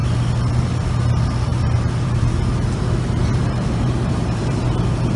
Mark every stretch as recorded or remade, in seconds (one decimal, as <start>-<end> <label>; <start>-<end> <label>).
0.0-1.5 recorded; 1.5-4.6 remade; 4.6-5.2 recorded